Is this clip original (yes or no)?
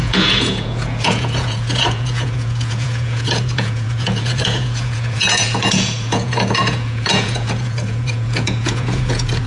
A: no